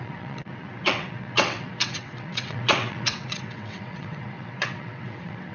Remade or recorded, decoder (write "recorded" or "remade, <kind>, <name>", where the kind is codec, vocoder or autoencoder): remade, vocoder, WaveNeXt